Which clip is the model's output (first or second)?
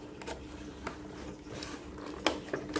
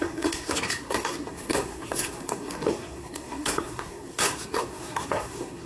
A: second